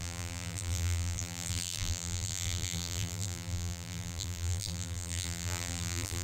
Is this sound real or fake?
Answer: fake